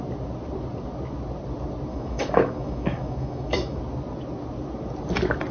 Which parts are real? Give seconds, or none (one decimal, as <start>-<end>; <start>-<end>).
0.0-1.9; 3.8-5.5